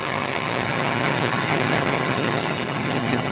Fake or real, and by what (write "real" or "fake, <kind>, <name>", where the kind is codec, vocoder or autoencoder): fake, vocoder, HiFi-GAN